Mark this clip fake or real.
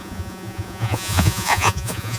fake